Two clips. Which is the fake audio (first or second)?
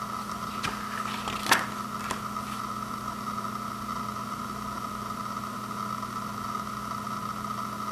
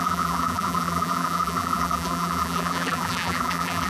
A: second